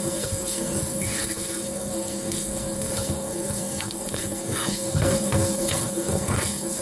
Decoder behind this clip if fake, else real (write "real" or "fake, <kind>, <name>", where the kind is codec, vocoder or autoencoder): fake, codec, SNAC